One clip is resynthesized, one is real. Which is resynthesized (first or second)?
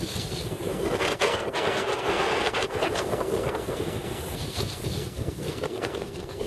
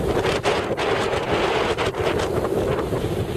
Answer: first